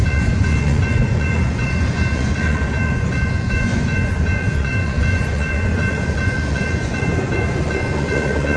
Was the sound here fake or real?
fake